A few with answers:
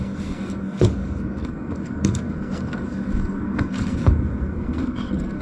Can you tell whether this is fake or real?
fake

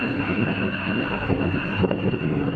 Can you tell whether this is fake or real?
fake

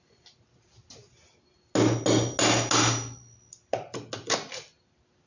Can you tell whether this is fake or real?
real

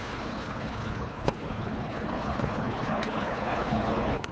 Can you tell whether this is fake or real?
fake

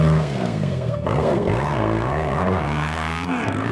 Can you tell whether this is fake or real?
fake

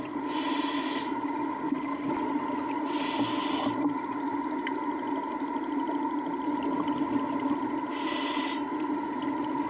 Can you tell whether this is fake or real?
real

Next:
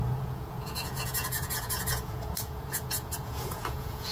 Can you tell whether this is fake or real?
fake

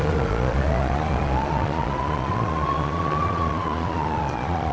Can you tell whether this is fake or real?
fake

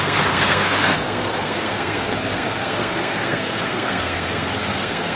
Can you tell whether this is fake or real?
fake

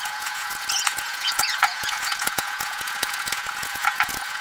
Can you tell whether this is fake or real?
fake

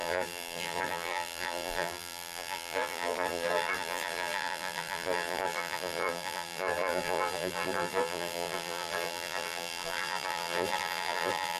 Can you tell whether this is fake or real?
fake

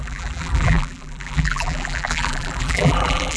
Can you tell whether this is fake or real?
fake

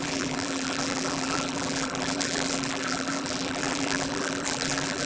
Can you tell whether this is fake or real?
fake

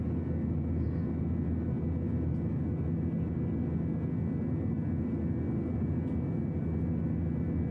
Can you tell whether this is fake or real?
real